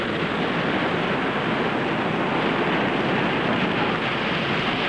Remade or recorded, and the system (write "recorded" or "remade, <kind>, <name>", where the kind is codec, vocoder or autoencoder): recorded